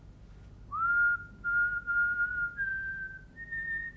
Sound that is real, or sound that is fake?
real